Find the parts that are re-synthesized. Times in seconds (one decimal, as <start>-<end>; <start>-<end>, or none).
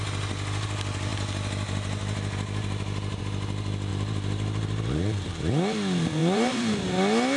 3.9-5.5; 6.2-6.8